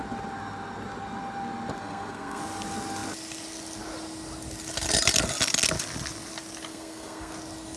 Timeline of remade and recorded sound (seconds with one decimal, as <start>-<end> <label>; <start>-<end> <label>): 0.0-1.8 recorded; 1.8-2.4 remade; 2.4-6.7 recorded; 6.7-7.3 remade; 7.3-7.8 recorded